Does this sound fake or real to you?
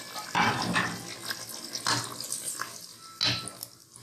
real